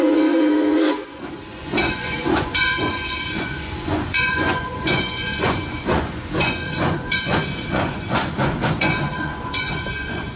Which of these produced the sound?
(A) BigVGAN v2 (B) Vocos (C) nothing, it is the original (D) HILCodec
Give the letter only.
B